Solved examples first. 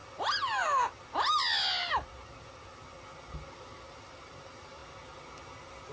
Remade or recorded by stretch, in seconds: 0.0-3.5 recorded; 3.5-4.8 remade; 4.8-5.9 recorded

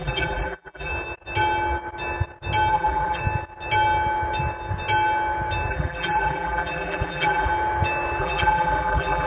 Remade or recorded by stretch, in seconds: 0.0-0.9 remade; 0.9-2.7 recorded; 2.7-3.2 remade; 3.2-5.7 recorded; 5.7-7.5 remade; 7.5-8.2 recorded; 8.2-9.3 remade

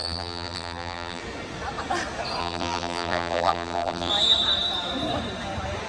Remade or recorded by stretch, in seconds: 0.0-1.2 remade; 1.2-2.4 recorded; 2.4-4.1 remade; 4.1-5.9 recorded

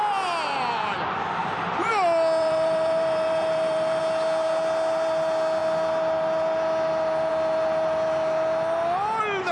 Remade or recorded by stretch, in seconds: 0.0-1.4 recorded; 1.4-1.9 remade; 1.9-2.4 recorded; 2.4-4.0 remade; 4.0-9.5 recorded

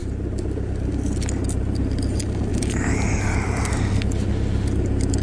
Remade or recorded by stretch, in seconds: 0.0-2.5 recorded; 2.5-3.7 remade; 3.7-5.2 recorded

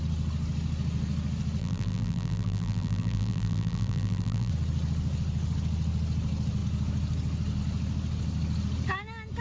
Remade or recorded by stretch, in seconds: 0.0-1.6 recorded; 1.6-4.5 remade; 4.5-9.4 recorded

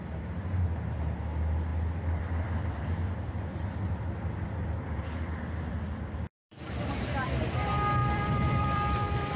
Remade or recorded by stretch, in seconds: 0.0-1.7 recorded; 1.7-6.6 remade; 6.6-8.0 recorded; 8.0-9.4 remade